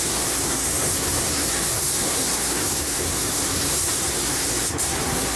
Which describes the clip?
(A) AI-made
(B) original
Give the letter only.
A